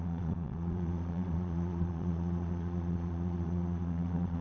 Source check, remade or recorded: remade